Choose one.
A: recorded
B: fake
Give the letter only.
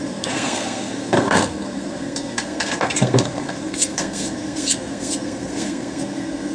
B